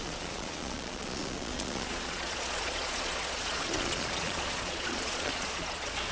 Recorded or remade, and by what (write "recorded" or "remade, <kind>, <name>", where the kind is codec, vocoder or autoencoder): remade, vocoder, Vocos